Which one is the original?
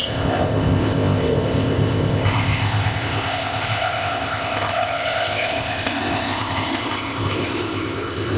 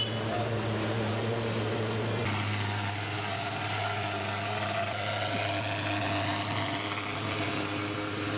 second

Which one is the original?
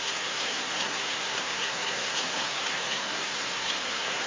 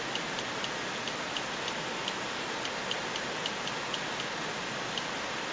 second